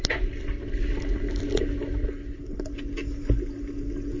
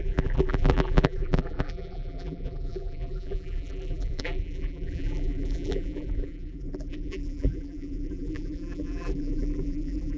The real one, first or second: first